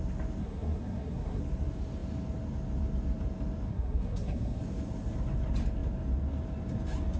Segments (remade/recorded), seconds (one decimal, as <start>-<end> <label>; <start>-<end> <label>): 0.0-0.4 recorded; 0.4-1.4 remade; 1.4-3.7 recorded; 3.7-4.6 remade; 4.6-7.2 recorded